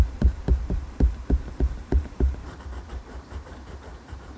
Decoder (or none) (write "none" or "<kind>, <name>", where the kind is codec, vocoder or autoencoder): vocoder, BigVGAN v2